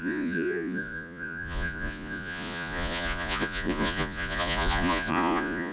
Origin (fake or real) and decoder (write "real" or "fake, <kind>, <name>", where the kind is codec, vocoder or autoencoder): fake, vocoder, Vocos